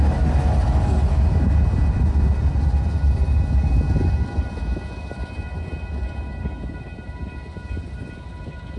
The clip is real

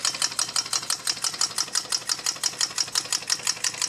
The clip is fake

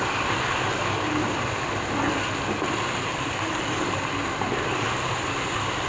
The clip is real